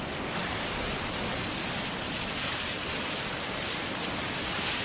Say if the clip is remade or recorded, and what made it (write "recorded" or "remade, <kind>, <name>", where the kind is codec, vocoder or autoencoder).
recorded